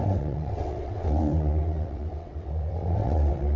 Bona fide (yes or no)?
no